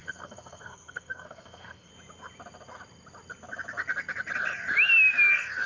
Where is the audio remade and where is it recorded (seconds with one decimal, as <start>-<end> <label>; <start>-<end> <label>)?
0.0-1.9 remade; 1.9-5.3 recorded; 5.3-5.7 remade